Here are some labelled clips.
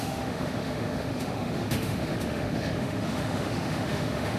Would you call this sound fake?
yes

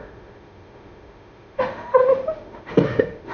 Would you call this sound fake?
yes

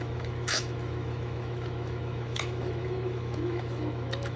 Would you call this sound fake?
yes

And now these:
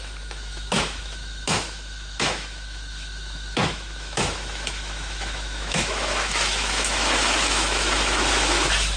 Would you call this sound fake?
yes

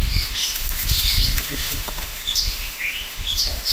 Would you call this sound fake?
yes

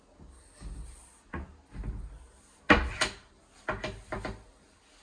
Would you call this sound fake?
no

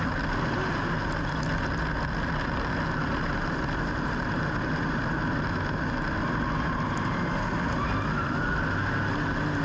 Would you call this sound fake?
no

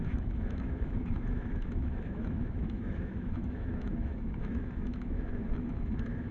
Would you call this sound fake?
yes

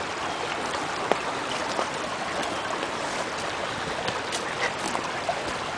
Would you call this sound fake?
no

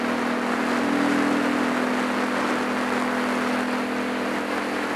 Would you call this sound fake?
no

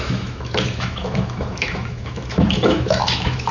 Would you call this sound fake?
yes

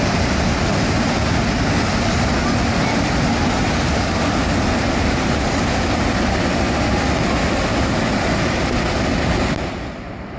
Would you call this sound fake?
no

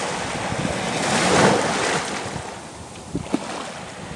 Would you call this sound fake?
no